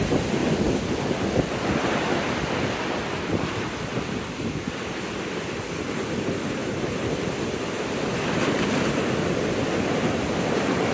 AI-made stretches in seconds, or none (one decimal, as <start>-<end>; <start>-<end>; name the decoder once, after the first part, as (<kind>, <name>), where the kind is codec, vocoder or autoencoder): 6.6-10.9 (vocoder, BigVGAN v2)